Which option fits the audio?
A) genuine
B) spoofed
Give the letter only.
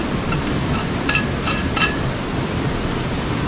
B